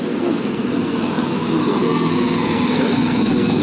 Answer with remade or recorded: remade